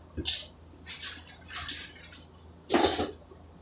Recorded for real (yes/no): yes